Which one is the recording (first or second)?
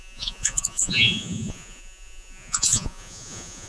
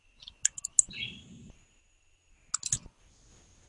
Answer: second